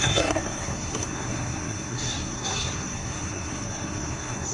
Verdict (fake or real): fake